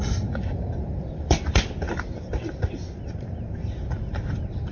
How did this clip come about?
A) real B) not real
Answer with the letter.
A